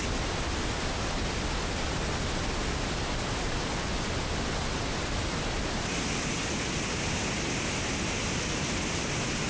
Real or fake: real